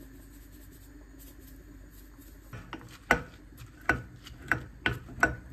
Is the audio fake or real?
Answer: real